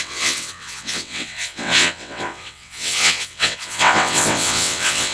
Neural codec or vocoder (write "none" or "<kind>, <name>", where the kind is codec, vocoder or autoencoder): vocoder, WaveNeXt